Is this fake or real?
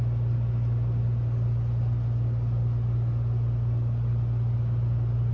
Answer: real